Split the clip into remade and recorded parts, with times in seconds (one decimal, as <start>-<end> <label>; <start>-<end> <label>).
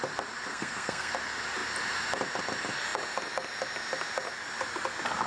0.0-0.5 recorded; 0.5-1.1 remade; 1.1-5.3 recorded